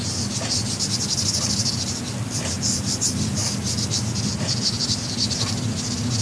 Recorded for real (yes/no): yes